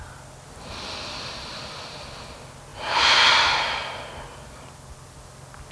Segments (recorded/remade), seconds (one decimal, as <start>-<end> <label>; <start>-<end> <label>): 0.0-5.7 recorded